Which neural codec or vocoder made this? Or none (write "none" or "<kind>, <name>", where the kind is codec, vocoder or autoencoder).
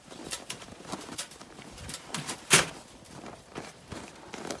vocoder, BigVGAN v2